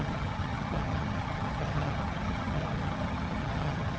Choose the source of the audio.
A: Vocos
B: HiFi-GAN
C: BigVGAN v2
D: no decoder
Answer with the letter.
B